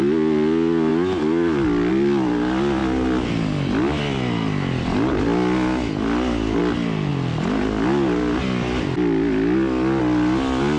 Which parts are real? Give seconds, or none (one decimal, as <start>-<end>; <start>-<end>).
0.0-10.8